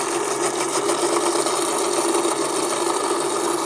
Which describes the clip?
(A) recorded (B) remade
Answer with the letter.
A